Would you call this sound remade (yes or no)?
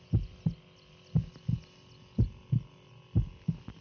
no